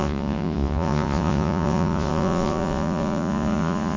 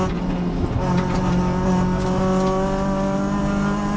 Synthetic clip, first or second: first